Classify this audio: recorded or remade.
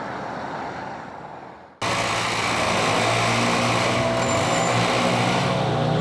recorded